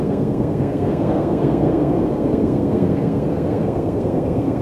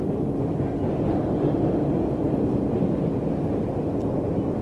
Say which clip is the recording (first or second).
second